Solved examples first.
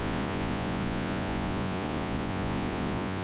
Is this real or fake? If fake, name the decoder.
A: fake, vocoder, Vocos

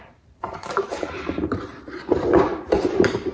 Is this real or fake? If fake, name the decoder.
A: fake, vocoder, BigVGAN v2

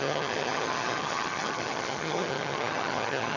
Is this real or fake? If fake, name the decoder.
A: fake, vocoder, HiFi-GAN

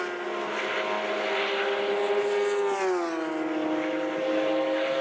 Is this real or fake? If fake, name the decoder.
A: real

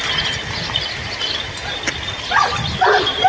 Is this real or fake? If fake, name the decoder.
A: real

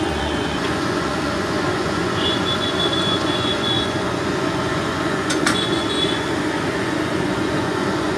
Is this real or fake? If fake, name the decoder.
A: fake, vocoder, Vocos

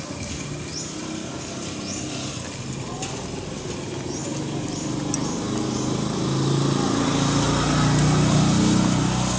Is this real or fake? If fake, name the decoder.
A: real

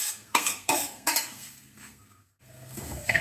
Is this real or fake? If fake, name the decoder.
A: fake, codec, SNAC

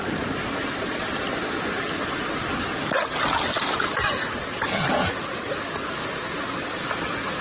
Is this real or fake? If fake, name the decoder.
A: real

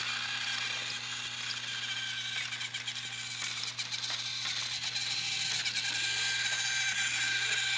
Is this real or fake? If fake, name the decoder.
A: real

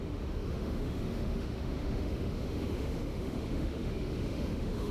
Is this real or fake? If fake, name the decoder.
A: fake, autoencoder, DAC-VAE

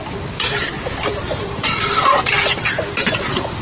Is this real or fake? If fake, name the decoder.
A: fake, vocoder, BigVGAN v2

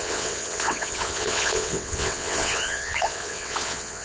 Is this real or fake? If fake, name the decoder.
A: fake, vocoder, WaveNeXt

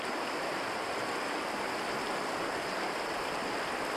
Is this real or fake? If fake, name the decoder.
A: real